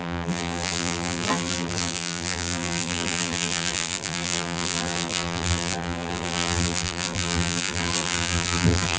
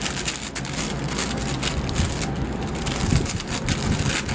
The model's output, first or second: first